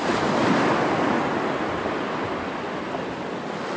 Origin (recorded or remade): recorded